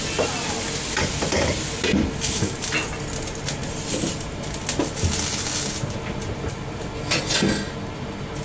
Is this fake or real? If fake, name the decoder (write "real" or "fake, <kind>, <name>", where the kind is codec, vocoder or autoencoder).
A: real